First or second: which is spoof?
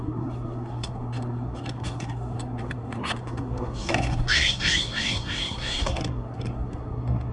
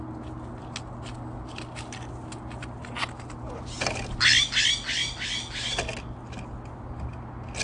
first